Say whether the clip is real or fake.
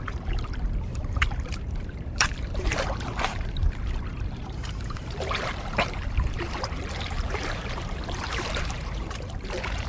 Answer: fake